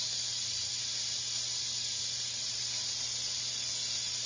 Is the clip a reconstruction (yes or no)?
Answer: no